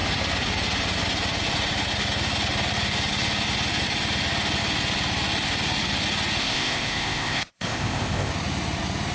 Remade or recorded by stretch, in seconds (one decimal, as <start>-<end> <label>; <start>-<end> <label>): 0.0-6.4 recorded; 6.4-8.3 remade; 8.3-9.1 recorded